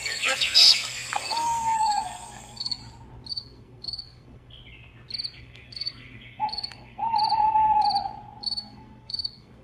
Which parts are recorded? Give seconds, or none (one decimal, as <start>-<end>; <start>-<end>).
2.8-3.3; 4.6-5.4; 7.0-8.4